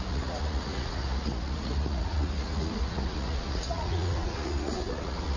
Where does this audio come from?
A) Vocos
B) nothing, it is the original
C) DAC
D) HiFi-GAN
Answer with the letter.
A